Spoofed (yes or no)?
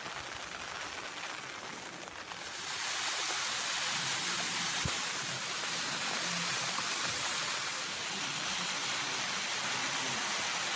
no